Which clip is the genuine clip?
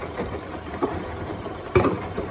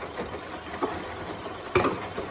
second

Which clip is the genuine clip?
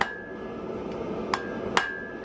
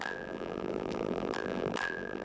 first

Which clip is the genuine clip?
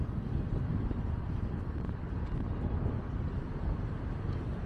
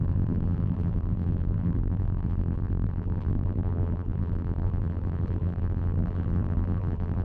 first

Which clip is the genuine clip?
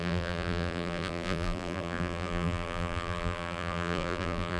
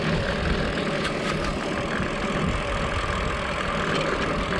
second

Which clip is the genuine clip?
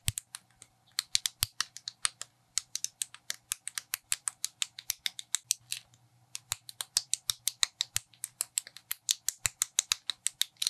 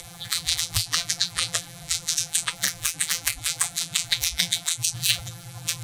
first